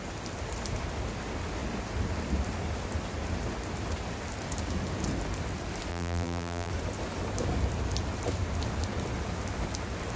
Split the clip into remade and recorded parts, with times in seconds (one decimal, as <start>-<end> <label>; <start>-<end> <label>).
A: 0.0-5.9 recorded; 5.9-6.7 remade; 6.7-10.2 recorded